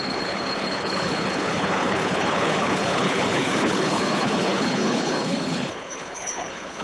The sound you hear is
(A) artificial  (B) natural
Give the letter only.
A